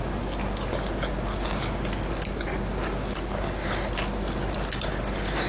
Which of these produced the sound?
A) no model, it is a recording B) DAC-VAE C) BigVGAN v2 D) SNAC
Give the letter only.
A